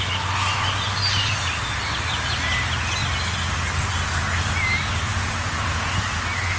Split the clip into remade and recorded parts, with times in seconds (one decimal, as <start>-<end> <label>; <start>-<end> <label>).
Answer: 0.0-5.1 recorded; 5.1-6.1 remade; 6.1-6.6 recorded